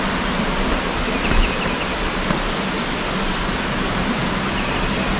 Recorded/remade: recorded